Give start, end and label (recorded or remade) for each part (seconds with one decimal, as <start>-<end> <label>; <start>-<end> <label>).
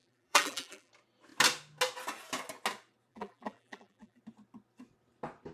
0.0-0.9 remade; 0.9-3.1 recorded; 3.1-4.2 remade; 4.2-5.5 recorded